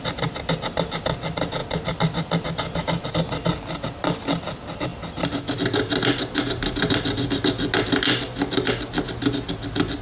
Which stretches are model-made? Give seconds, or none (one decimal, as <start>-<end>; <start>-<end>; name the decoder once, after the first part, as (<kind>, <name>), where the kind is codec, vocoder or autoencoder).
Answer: none